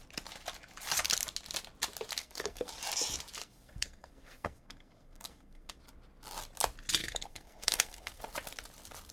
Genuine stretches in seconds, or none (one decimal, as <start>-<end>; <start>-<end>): 0.0-2.2; 2.7-3.4; 5.8-7.0; 8.2-9.1